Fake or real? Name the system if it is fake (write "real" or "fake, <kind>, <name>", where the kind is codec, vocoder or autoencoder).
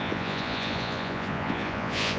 fake, vocoder, Vocos